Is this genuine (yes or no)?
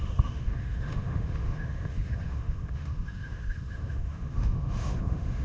no